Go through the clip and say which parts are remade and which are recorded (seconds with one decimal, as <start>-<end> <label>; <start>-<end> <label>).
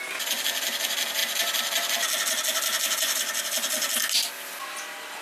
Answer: 0.0-5.2 recorded